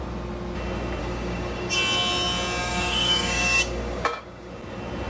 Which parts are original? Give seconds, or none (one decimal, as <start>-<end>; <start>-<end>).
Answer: 0.0-1.0; 1.7-2.6; 4.5-5.1